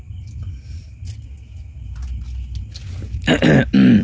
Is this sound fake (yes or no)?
no